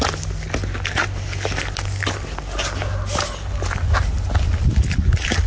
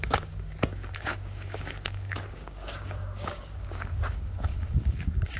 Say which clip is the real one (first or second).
first